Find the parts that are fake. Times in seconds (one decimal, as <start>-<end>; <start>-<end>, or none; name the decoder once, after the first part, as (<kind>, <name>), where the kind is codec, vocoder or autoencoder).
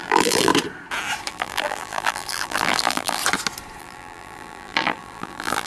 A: 0.0-0.5 (vocoder, BigVGAN v2); 1.3-3.2; 3.8-5.7